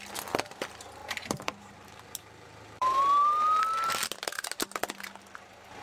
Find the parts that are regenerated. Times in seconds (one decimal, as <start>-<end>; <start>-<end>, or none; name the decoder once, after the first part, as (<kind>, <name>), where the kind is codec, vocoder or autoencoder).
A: 1.0-3.6 (vocoder, BigVGAN v2)